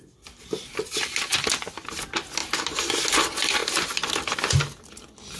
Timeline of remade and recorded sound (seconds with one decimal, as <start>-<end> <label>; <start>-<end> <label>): 0.0-2.4 recorded; 2.4-2.9 remade; 2.9-3.6 recorded; 3.6-4.2 remade; 4.2-5.4 recorded